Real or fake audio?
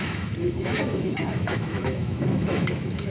fake